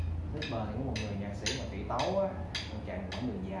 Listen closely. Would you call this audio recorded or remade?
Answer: recorded